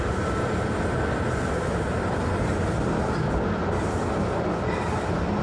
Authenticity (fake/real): real